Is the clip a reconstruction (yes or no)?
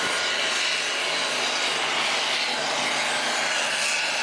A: no